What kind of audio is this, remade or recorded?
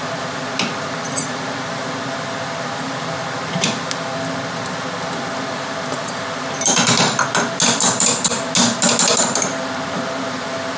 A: recorded